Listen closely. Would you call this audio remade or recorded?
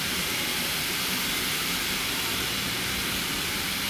remade